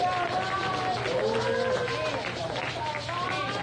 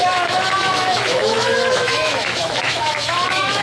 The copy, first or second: second